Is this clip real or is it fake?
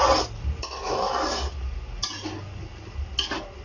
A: real